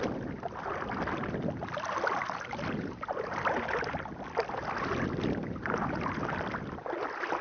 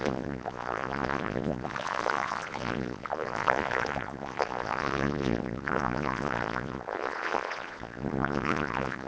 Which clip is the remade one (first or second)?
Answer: second